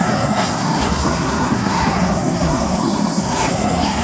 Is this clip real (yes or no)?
no